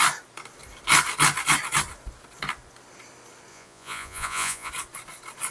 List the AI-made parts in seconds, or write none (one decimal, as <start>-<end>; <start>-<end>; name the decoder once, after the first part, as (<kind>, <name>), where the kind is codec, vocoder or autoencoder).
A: 3.5-4.7 (vocoder, Vocos)